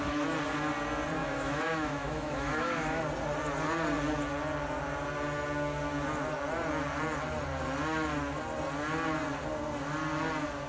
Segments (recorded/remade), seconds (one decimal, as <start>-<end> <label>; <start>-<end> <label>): 0.0-1.2 recorded; 1.2-3.0 remade; 3.0-10.7 recorded